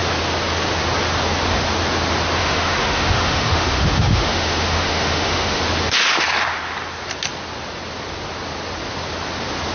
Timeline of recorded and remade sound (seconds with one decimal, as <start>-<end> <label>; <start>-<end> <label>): 0.0-2.4 recorded; 2.4-5.6 remade; 5.6-9.7 recorded